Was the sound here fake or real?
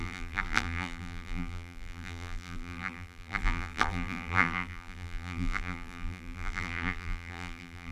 fake